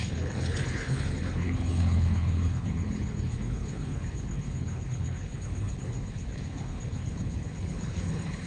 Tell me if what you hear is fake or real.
fake